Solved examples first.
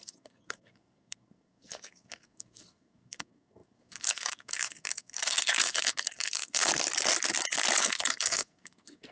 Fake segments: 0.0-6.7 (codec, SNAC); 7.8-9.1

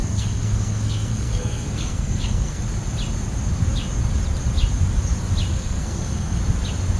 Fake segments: 0.0-2.6 (codec, SNAC); 5.5-6.4

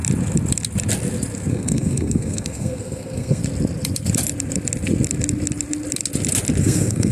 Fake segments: 1.5-3.4 (codec, SNAC); 6.6-7.1

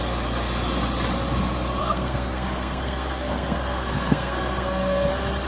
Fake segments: 1.8-5.1 (codec, SNAC)

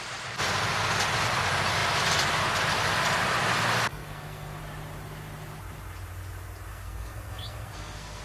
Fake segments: 3.9-4.6 (codec, SNAC); 6.7-8.2

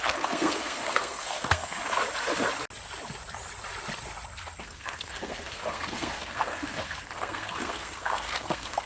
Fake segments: 0.0-1.8 (codec, SNAC); 4.6-8.9